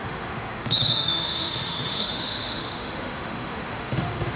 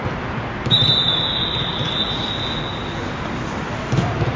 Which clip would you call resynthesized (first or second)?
first